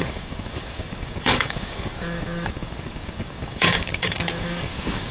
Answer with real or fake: fake